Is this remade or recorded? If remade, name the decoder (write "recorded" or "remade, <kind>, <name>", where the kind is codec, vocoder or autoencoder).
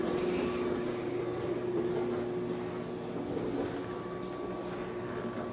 recorded